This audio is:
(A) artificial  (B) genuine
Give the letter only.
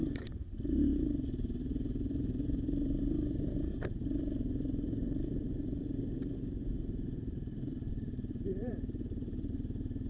A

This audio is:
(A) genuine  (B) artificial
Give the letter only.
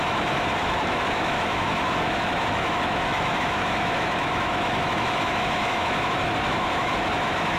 B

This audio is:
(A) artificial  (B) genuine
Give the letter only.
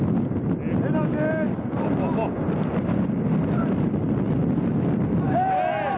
B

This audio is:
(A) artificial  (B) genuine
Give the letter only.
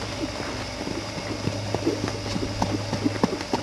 B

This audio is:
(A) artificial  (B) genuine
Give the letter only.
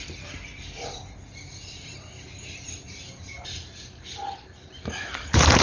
A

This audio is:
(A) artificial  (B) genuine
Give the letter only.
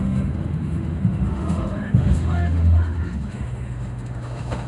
A